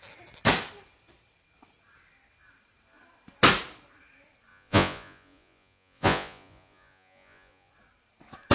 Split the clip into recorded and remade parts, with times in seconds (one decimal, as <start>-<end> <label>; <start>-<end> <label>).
0.0-4.5 recorded; 4.5-7.7 remade; 7.7-8.5 recorded